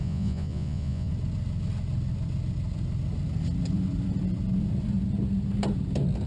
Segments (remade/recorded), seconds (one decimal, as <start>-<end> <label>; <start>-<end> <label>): 0.0-1.1 remade; 1.1-6.3 recorded